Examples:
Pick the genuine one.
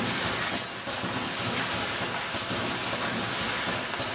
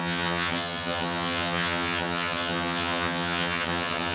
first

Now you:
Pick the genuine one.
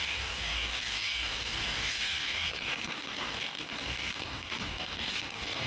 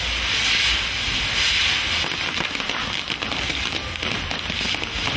second